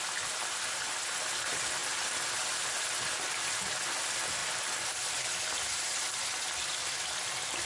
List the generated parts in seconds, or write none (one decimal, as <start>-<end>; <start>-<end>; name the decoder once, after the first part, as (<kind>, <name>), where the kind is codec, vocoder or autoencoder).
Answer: none